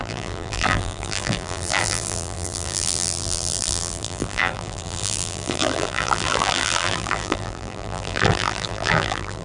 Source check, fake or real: fake